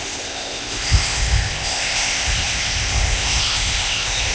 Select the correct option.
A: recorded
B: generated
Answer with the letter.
B